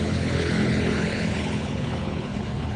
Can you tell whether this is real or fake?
fake